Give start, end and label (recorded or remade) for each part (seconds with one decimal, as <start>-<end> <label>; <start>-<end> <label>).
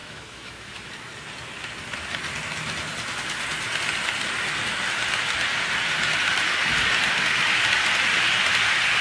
0.0-0.9 remade; 0.9-9.0 recorded